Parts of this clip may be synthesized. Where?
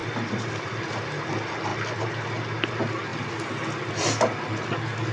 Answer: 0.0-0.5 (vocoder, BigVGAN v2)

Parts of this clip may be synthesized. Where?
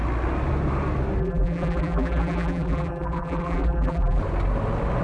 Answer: 1.2-4.2 (vocoder, BigVGAN v2)